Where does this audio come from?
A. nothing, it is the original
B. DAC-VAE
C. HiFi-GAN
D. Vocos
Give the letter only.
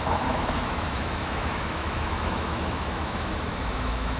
B